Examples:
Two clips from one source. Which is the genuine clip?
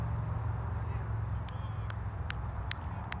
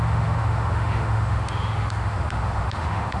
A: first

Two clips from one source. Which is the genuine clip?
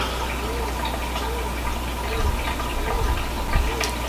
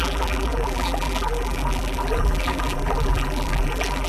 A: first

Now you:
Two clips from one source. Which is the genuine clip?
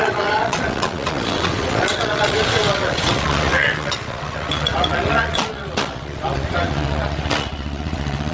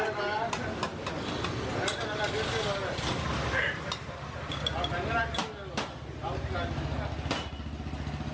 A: second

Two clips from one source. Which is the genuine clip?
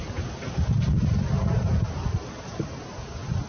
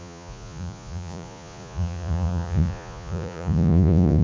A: first